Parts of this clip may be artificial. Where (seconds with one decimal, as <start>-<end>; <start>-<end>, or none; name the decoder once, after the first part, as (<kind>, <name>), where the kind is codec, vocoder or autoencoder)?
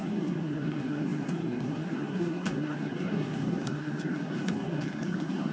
0.0-5.5 (codec, SNAC)